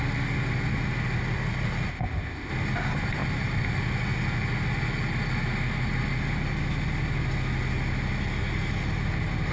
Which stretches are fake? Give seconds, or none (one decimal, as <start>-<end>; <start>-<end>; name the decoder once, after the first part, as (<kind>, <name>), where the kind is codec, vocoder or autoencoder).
1.9-2.5 (codec, ZipCodec)